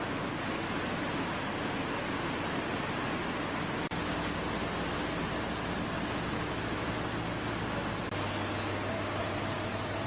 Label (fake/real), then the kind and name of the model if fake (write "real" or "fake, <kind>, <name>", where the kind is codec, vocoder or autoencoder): real